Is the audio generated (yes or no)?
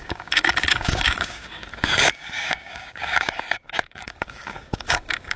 yes